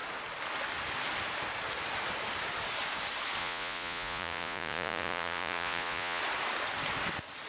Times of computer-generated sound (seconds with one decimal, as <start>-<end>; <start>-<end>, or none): 3.4-6.2